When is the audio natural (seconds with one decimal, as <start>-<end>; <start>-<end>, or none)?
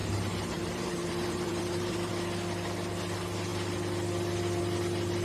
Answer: 2.1-5.2